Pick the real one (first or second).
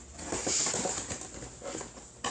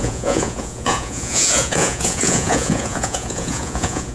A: first